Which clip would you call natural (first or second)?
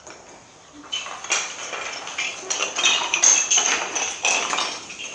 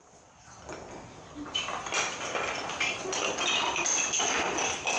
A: second